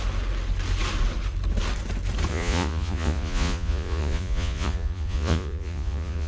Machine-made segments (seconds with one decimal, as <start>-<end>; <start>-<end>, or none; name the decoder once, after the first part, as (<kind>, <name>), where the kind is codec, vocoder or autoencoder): 2.3-6.3 (vocoder, Vocos)